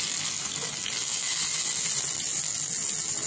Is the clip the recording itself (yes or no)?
yes